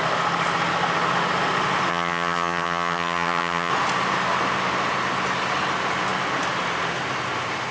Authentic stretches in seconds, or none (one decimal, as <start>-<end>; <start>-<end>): 0.0-1.9; 3.7-7.7